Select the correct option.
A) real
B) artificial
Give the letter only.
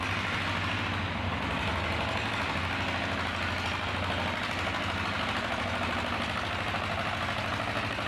A